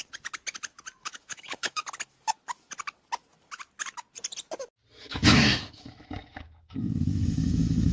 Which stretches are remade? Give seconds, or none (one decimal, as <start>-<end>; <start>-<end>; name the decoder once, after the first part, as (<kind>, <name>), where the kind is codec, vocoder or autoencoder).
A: 1.0-1.8 (autoencoder, DAC-VAE); 5.0-7.9